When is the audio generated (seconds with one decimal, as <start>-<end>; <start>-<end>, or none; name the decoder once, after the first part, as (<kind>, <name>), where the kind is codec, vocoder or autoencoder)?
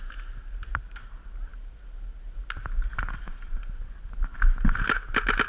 none